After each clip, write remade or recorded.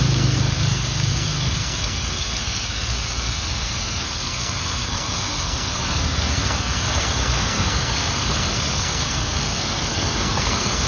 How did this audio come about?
remade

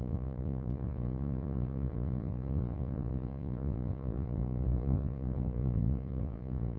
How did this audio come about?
remade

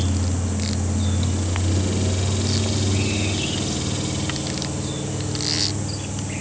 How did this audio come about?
recorded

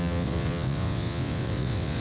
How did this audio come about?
remade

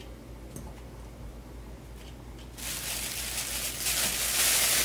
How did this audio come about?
recorded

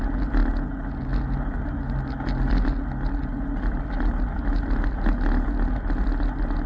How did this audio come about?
recorded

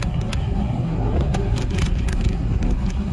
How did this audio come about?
remade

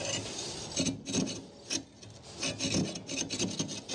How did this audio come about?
recorded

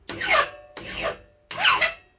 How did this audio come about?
recorded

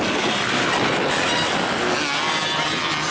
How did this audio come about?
recorded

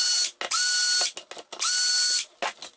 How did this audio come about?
recorded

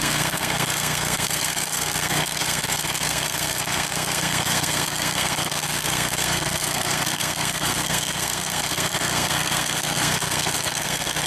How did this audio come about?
remade